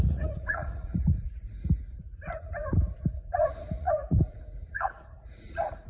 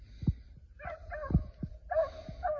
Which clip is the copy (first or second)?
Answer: first